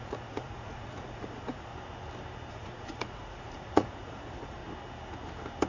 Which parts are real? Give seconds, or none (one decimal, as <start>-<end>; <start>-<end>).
1.7-2.5; 4.6-5.7